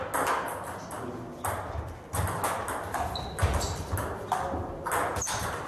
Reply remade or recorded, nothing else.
recorded